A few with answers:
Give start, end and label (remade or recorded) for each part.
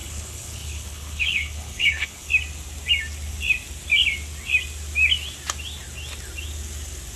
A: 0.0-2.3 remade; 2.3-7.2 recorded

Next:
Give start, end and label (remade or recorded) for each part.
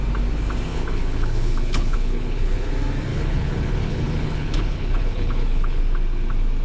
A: 0.0-0.7 recorded; 0.7-2.7 remade; 2.7-3.1 recorded; 3.1-5.8 remade; 5.8-6.6 recorded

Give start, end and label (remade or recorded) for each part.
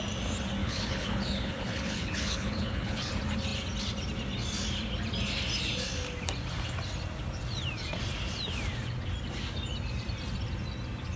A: 0.0-0.6 recorded; 0.6-3.1 remade; 3.1-11.2 recorded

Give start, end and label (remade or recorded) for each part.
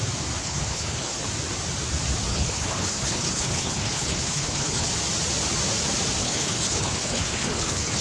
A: 0.0-0.4 recorded; 0.4-1.2 remade; 1.2-2.3 recorded; 2.3-4.9 remade; 4.9-6.2 recorded; 6.2-8.0 remade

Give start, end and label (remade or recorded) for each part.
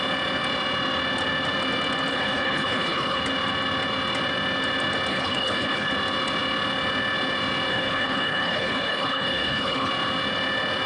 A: 0.0-2.1 recorded; 2.1-3.2 remade; 3.2-5.1 recorded; 5.1-5.9 remade; 5.9-7.7 recorded; 7.7-9.9 remade; 9.9-10.9 recorded